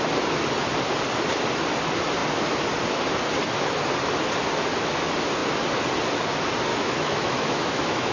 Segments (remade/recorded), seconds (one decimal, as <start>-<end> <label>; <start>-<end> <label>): 0.0-6.7 recorded; 6.7-8.1 remade